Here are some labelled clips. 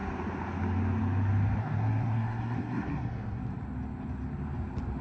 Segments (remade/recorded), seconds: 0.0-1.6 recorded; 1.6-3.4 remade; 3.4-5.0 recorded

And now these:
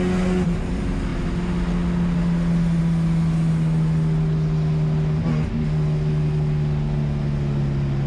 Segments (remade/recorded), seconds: 0.0-8.1 recorded

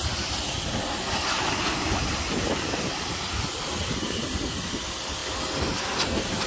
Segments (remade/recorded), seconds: 0.0-6.5 recorded

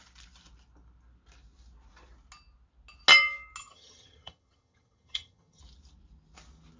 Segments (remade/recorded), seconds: 0.0-3.6 recorded; 3.6-5.6 remade; 5.6-6.8 recorded

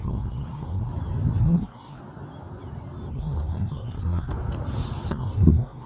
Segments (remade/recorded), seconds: 0.0-0.9 remade; 0.9-1.4 recorded; 1.4-2.0 remade; 2.0-3.1 recorded; 3.1-4.3 remade; 4.3-5.1 recorded; 5.1-5.9 remade